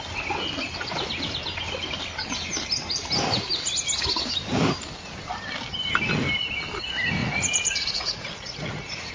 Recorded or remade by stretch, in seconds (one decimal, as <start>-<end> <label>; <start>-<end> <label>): 0.0-7.2 recorded; 7.2-9.1 remade